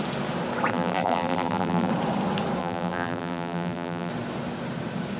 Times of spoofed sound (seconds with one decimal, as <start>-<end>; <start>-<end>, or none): 0.7-1.9; 2.6-4.1